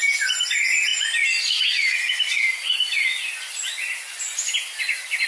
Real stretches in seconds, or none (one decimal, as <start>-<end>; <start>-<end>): 0.0-5.3